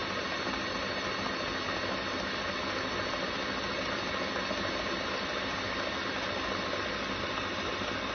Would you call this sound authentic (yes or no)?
yes